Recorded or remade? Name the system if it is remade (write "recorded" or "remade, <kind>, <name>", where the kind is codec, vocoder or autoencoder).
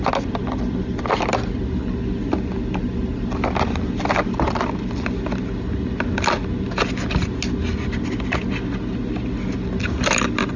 recorded